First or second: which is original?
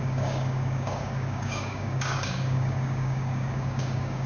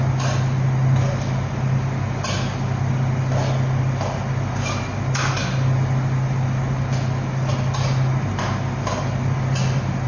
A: second